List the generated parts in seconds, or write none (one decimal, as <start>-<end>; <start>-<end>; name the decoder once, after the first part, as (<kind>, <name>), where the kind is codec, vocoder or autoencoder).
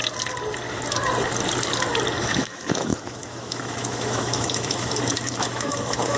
2.2-6.2 (autoencoder, DAC-VAE)